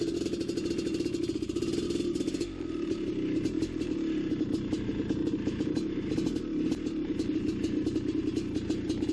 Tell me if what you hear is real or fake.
real